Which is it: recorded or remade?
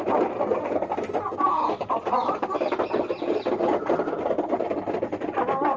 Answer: recorded